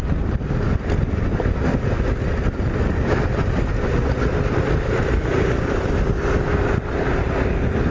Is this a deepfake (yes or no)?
no